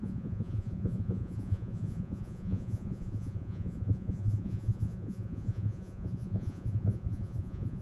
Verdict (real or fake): fake